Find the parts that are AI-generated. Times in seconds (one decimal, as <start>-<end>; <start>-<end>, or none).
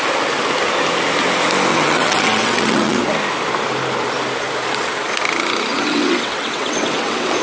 1.7-3.0; 5.7-7.4